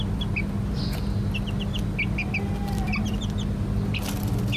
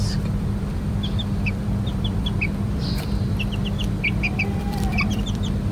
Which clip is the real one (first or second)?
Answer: first